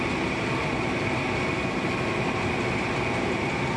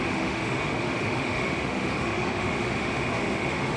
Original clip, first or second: first